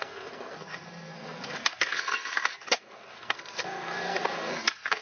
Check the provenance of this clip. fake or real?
fake